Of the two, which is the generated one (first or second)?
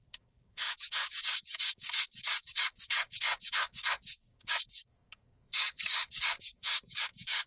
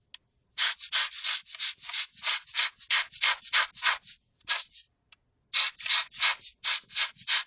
first